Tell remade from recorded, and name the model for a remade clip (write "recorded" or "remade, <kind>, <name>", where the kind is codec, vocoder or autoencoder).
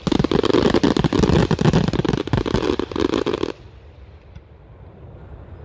recorded